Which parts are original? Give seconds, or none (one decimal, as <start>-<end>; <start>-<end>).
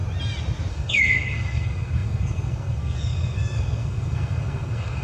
0.0-0.7